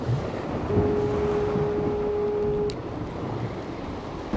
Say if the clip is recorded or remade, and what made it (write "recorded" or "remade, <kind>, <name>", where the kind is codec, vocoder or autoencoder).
recorded